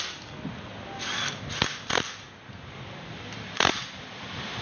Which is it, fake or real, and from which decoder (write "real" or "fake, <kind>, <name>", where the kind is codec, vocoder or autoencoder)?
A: real